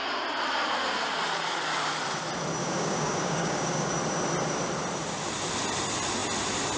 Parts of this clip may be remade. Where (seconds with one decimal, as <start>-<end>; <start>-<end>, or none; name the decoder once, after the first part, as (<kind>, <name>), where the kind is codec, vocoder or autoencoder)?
2.6-3.9 (codec, DAC)